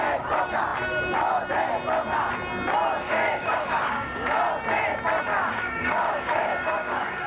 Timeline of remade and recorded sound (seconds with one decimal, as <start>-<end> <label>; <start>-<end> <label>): 0.0-3.0 recorded; 3.0-4.4 remade; 4.4-5.3 recorded; 5.3-7.3 remade